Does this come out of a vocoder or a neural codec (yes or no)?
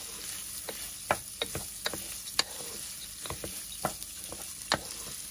no